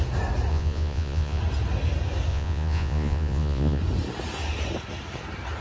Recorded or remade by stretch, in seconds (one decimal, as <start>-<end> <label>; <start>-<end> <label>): 0.0-0.5 recorded; 0.5-1.4 remade; 1.4-2.3 recorded; 2.3-3.8 remade; 3.8-5.6 recorded